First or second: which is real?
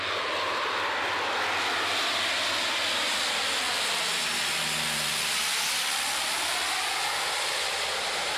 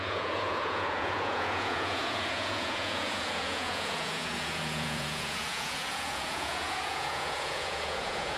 first